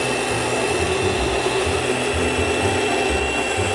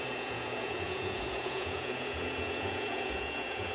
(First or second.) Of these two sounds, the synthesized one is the second